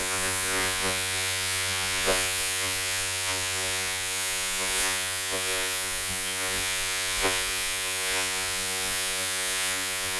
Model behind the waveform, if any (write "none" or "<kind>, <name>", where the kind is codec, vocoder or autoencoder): vocoder, Vocos